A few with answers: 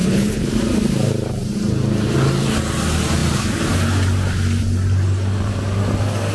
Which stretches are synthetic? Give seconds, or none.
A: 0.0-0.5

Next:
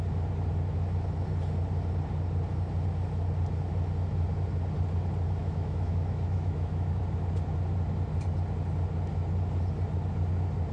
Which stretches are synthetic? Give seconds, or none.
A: 5.4-7.0

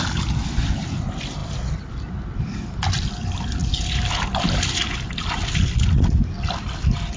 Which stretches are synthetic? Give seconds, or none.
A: none

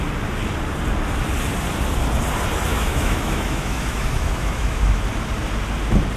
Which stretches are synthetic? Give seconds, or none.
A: 2.7-5.0

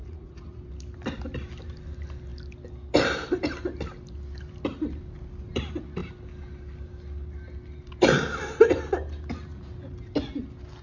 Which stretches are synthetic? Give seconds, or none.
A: 0.0-0.6